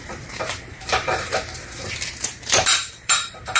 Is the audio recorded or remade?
remade